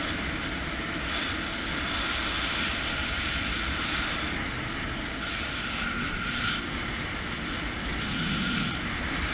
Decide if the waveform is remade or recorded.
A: recorded